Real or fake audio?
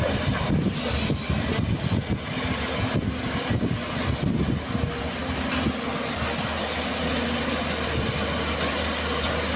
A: real